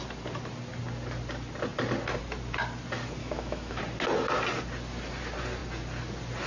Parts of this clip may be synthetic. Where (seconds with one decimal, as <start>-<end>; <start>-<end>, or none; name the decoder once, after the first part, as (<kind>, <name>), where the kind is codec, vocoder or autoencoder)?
3.2-3.8 (autoencoder, DAC-VAE)